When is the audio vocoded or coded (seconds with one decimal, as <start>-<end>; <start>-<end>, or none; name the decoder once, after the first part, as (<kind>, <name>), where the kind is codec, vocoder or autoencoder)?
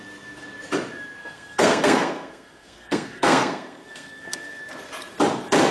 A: 1.2-4.6 (codec, SNAC)